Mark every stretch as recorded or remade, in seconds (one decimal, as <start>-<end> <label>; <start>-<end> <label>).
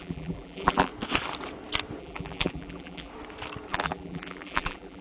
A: 0.0-0.9 remade; 0.9-2.0 recorded; 2.0-3.1 remade; 3.1-3.7 recorded; 3.7-5.0 remade